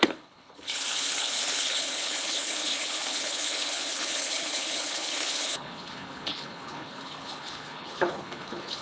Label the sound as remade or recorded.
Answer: remade